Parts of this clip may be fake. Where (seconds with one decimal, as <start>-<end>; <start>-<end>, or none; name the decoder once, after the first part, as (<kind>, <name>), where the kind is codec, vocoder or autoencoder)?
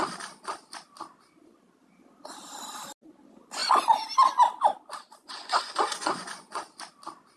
5.2-6.7 (vocoder, Vocos)